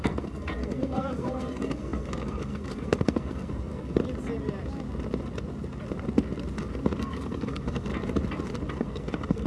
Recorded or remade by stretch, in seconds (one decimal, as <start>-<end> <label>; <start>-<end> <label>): 0.0-4.0 remade; 4.0-7.0 recorded; 7.0-7.9 remade; 7.9-8.7 recorded; 8.7-9.5 remade